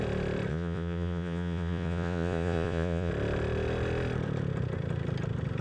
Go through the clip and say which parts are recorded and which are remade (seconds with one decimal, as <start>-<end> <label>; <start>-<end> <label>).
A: 0.0-0.5 recorded; 0.5-3.1 remade; 3.1-5.6 recorded